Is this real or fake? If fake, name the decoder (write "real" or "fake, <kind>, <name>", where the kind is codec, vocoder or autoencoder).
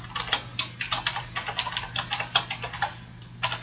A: real